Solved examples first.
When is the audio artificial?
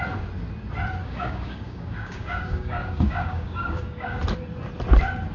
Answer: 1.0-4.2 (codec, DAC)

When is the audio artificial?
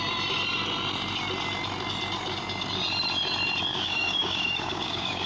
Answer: 3.7-5.3 (codec, DAC)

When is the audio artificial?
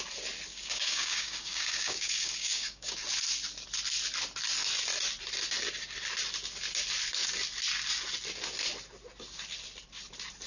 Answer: 0.5-2.9 (codec, DAC)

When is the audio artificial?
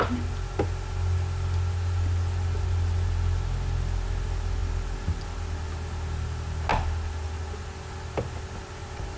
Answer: none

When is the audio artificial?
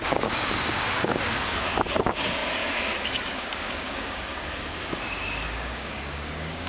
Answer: 0.0-6.7 (codec, DAC)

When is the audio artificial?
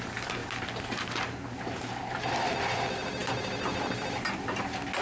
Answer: none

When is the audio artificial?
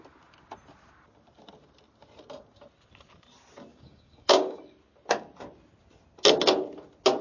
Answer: 3.7-4.6 (codec, DAC)